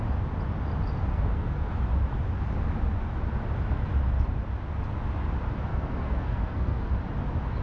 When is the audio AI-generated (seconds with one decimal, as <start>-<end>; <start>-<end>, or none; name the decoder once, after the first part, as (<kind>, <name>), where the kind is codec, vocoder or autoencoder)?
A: 1.1-1.7 (codec, SNAC); 5.7-6.9